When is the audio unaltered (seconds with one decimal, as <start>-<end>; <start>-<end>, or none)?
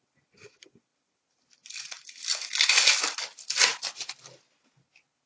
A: 0.0-5.3